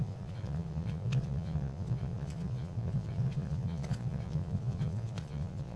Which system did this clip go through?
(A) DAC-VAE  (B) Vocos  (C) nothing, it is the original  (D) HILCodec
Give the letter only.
B